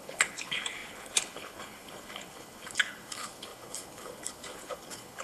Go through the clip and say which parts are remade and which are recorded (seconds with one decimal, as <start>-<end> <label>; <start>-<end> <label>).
0.0-5.2 remade